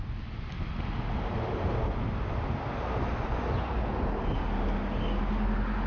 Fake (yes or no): no